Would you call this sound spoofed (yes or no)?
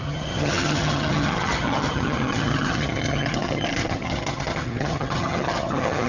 yes